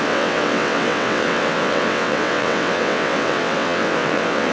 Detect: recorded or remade remade